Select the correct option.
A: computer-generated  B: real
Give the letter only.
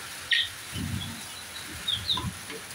B